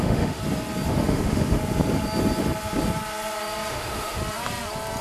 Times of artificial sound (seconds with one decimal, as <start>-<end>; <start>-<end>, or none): 0.0-0.4; 0.9-1.6; 3.7-4.2